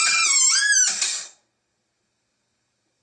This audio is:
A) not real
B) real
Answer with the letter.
B